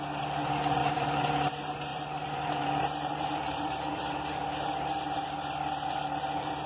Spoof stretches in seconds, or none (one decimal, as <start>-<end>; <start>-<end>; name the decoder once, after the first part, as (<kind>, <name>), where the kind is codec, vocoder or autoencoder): 0.8-1.5 (vocoder, BigVGAN v2); 1.9-5.9